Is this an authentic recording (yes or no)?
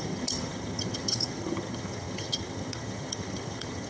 no